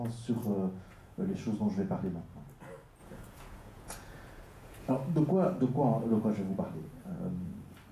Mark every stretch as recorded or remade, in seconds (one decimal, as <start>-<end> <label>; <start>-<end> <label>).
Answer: 0.0-0.4 recorded; 0.4-2.0 remade; 2.0-3.0 recorded; 3.0-4.9 remade; 4.9-7.9 recorded